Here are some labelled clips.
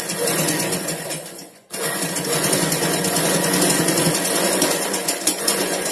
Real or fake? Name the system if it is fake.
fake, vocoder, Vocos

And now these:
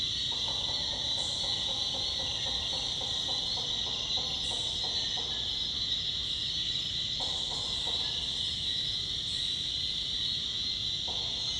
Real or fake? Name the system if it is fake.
real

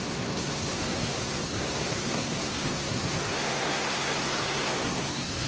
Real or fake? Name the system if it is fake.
fake, codec, SNAC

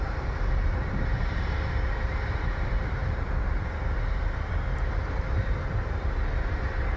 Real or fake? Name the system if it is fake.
fake, vocoder, BigVGAN v2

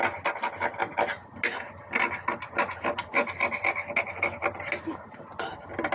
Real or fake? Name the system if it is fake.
real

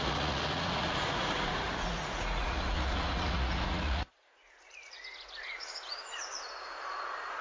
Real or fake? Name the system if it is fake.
fake, vocoder, Vocos